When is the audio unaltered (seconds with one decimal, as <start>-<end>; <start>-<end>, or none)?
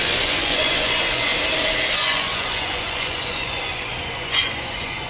1.3-1.9